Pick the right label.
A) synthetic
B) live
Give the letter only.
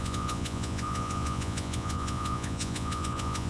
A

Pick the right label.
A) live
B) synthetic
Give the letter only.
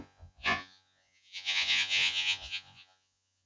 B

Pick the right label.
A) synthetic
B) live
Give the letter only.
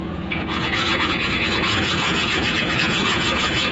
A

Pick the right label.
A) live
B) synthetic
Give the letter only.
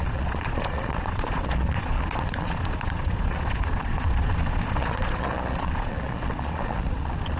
B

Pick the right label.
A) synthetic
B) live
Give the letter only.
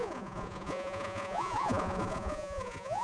A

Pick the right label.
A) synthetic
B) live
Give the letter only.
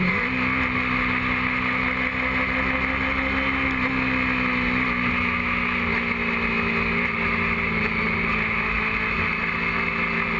B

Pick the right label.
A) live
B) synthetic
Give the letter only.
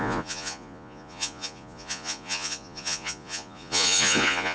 B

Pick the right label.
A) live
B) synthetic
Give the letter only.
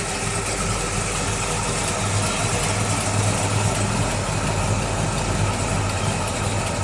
A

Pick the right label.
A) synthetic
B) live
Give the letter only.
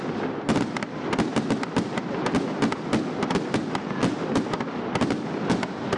B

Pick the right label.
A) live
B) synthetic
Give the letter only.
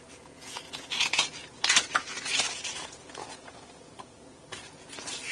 B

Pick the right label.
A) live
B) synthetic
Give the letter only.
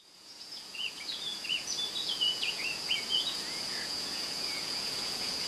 B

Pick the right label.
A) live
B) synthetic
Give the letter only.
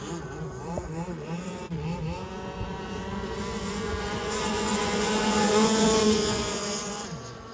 B